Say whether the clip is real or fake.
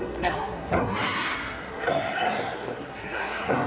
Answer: fake